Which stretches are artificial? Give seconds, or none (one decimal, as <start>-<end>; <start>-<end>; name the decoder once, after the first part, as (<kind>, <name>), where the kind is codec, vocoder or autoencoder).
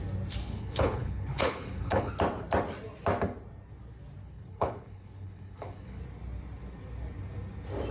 0.4-2.1 (codec, HILCodec); 4.2-6.0